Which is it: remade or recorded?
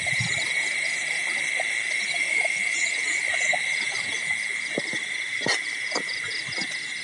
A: recorded